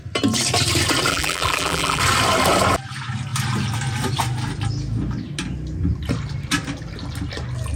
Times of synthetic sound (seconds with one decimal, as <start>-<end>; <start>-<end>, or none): 1.1-2.0